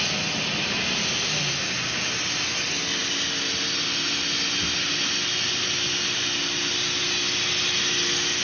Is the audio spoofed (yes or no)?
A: no